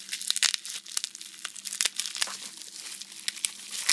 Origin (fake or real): real